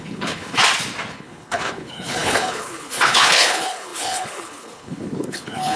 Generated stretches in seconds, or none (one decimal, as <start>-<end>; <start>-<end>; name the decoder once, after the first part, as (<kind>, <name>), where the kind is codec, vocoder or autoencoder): 0.0-0.6 (codec, HILCodec); 1.1-5.8